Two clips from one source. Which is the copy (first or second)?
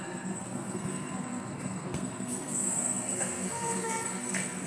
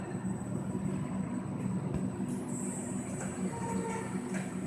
first